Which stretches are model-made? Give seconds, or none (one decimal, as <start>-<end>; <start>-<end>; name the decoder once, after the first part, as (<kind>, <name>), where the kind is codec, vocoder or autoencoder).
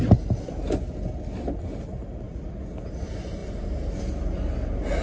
3.4-4.0 (vocoder, BigVGAN v2)